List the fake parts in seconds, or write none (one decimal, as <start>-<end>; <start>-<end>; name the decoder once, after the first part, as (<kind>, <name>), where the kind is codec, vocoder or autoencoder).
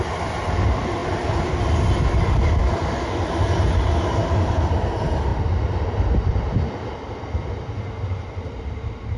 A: none